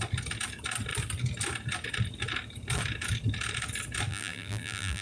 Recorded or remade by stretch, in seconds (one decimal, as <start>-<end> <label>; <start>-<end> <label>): 0.0-4.1 recorded; 4.1-5.0 remade